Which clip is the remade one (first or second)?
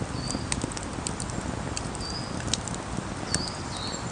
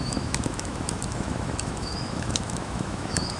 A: second